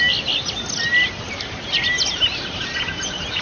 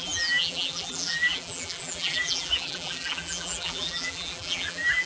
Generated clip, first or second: second